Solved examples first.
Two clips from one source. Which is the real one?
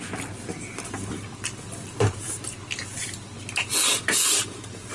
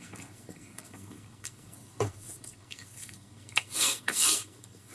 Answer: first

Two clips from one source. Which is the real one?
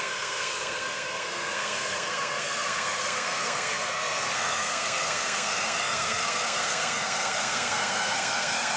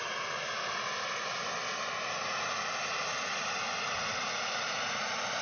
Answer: second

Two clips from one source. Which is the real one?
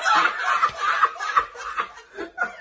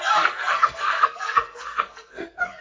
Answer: first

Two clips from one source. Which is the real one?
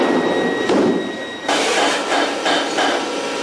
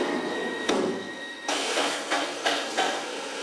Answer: first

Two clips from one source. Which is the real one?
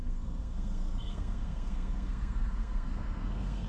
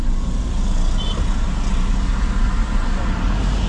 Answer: second